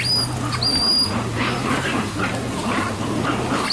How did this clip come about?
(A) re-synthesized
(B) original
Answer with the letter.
B